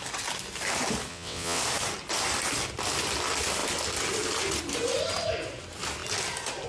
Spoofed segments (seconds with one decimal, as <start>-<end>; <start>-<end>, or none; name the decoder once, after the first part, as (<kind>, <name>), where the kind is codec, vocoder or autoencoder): 1.1-1.6 (vocoder, WaveNeXt)